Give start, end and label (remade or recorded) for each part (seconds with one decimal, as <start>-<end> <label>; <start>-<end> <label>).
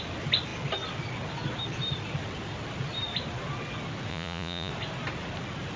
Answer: 0.0-4.1 recorded; 4.1-4.7 remade; 4.7-5.8 recorded